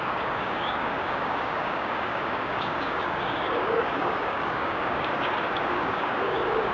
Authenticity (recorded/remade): remade